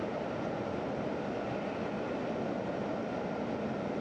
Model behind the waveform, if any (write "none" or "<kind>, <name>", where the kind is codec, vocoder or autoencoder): none